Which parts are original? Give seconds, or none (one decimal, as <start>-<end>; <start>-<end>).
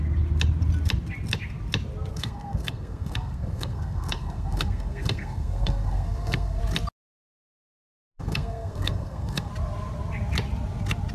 0.0-2.1; 6.6-8.2; 9.5-11.1